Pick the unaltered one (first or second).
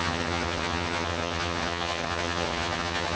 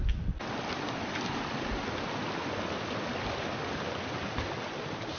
second